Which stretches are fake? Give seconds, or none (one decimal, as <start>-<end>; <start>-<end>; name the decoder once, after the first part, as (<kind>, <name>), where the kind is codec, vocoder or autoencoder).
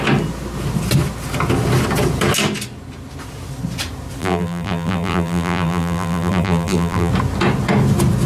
4.2-7.1 (vocoder, BigVGAN v2)